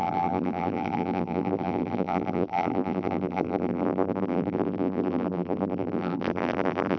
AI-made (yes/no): yes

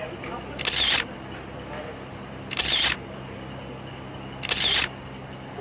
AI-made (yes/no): no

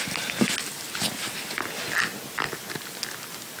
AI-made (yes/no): no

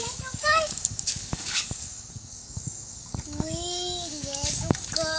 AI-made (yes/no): yes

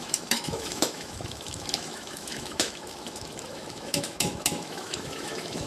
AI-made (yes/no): yes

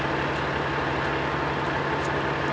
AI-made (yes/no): no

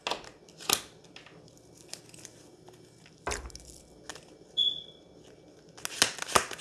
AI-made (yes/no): no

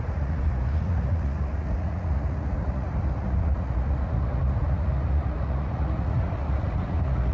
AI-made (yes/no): yes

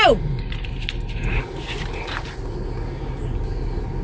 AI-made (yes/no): no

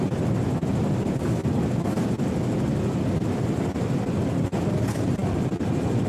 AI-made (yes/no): no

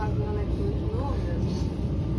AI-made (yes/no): no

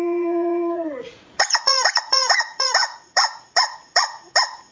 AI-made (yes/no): yes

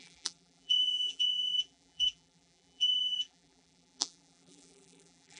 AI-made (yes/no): yes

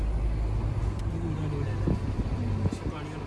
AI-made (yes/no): no